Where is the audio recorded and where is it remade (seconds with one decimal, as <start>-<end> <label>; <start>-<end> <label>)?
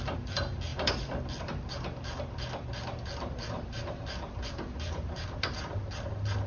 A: 0.0-6.5 remade